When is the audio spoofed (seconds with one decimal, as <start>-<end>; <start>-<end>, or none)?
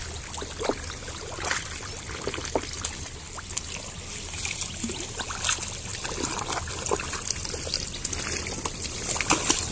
none